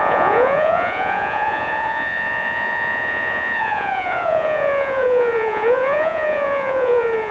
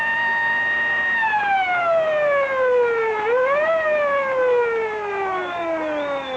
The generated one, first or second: first